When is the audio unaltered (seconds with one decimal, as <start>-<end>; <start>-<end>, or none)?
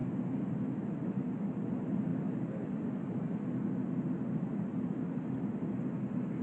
0.0-6.4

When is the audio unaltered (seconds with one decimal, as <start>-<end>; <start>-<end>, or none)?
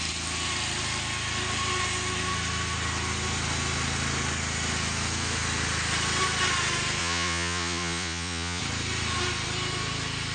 0.0-7.0; 8.6-10.3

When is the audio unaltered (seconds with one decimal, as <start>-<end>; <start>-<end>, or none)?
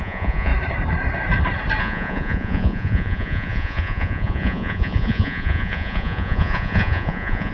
0.5-1.8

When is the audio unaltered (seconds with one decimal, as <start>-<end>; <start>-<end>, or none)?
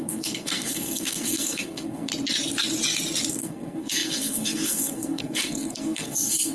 2.1-3.3